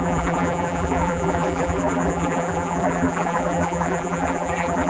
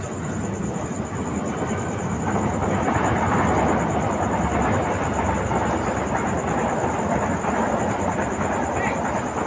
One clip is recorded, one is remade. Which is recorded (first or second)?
second